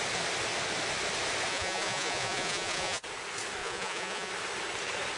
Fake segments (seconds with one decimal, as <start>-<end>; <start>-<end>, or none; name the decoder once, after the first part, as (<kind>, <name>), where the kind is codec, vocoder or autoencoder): 1.5-3.0 (vocoder, Vocos); 3.6-4.3